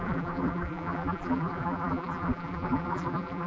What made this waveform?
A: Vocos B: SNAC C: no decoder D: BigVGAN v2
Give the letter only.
D